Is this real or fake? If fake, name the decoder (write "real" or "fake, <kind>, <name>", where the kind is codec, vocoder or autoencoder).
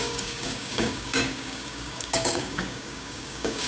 fake, codec, DAC